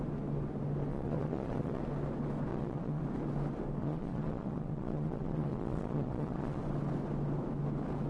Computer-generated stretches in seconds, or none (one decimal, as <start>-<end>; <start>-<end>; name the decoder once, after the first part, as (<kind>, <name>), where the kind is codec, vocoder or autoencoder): 0.9-1.8 (vocoder, Vocos); 2.5-3.0; 3.8-6.6